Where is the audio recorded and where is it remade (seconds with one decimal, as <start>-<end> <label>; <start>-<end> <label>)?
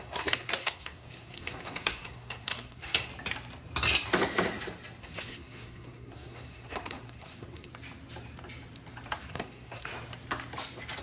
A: 0.0-3.1 remade; 3.1-5.0 recorded; 5.0-7.7 remade; 7.7-9.2 recorded; 9.2-9.9 remade; 9.9-11.0 recorded